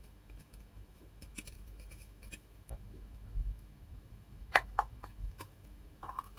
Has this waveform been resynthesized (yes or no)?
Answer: yes